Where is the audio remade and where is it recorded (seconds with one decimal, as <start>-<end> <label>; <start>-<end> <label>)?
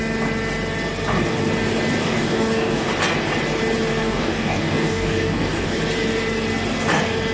0.0-2.0 recorded; 2.0-2.9 remade; 2.9-4.0 recorded; 4.0-5.8 remade; 5.8-7.3 recorded